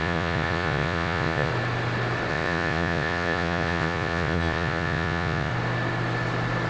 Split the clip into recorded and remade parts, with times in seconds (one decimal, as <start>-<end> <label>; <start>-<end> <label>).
0.0-1.5 remade; 1.5-2.3 recorded; 2.3-5.5 remade; 5.5-6.7 recorded